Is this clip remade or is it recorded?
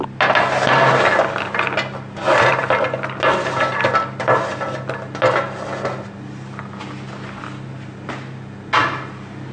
recorded